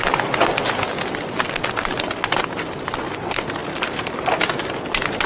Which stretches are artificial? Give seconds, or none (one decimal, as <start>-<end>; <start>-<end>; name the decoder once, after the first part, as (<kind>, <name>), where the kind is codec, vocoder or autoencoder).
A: none